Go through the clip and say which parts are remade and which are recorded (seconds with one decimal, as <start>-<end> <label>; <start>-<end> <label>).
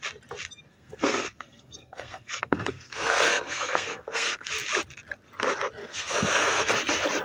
0.0-0.7 recorded; 0.7-4.5 remade; 4.5-5.8 recorded; 5.8-6.7 remade; 6.7-7.2 recorded